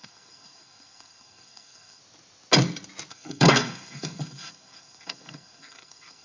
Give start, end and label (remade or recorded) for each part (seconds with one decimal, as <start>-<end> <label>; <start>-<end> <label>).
0.0-2.0 remade; 2.0-3.1 recorded; 3.1-6.2 remade